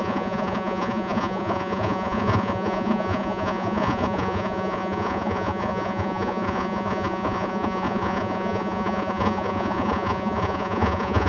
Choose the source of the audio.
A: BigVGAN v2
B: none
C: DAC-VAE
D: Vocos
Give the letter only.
D